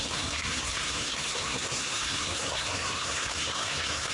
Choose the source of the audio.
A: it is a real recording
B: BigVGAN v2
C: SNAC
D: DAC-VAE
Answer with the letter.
C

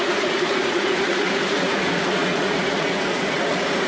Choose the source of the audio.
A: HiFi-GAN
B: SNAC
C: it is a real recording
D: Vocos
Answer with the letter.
D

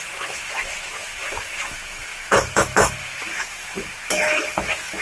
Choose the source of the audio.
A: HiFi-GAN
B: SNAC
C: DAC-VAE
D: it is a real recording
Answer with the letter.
C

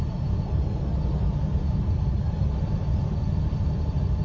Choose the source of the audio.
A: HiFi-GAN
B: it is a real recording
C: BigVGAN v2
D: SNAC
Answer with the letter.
B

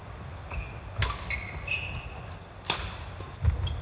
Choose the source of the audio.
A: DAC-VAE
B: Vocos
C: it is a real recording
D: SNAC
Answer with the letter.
C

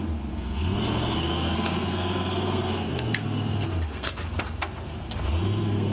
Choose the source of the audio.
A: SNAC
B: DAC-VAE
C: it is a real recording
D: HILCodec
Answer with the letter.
A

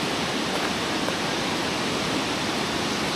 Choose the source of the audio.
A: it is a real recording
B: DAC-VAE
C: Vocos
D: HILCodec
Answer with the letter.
A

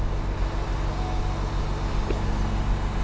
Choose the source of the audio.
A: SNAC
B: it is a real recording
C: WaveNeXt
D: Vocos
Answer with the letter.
B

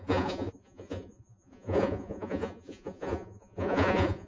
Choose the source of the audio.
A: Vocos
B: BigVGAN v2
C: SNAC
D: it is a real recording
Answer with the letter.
A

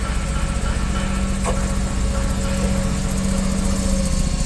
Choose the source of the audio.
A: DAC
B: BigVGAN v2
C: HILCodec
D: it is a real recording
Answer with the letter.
D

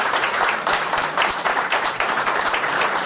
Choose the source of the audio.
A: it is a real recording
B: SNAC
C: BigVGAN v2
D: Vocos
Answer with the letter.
C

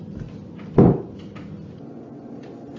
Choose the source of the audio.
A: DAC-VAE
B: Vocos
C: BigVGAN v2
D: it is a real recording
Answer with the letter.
D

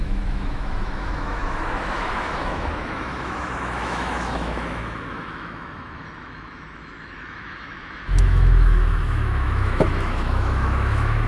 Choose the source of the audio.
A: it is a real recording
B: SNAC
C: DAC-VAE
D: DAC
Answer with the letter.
C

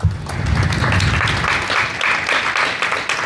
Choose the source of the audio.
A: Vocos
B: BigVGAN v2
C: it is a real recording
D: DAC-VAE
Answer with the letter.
C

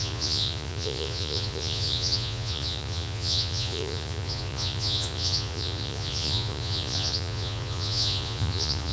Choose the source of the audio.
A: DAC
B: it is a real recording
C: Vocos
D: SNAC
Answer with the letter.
C